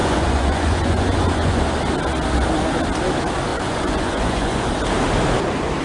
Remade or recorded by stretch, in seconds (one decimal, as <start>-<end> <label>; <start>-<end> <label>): 0.0-1.6 remade; 1.6-3.5 recorded; 3.5-4.7 remade; 4.7-5.8 recorded